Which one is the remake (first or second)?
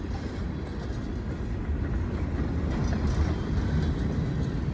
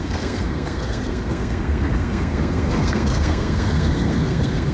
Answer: second